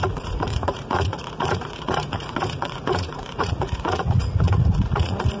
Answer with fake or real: fake